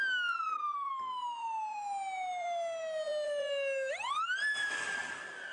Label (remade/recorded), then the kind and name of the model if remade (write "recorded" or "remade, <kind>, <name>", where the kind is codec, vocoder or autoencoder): recorded